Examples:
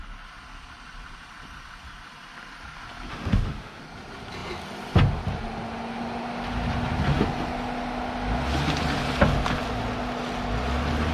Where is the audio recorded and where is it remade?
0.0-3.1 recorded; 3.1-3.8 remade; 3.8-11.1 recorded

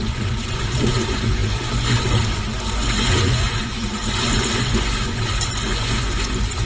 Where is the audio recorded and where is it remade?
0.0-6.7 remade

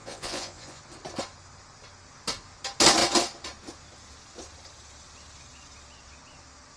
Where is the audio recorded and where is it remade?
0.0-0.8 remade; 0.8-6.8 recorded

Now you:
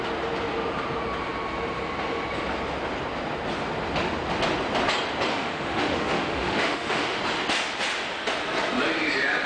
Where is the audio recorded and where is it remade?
0.0-5.3 recorded; 5.3-7.2 remade; 7.2-9.5 recorded